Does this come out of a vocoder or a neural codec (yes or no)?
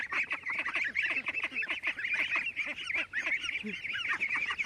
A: no